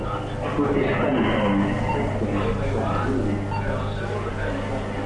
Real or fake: real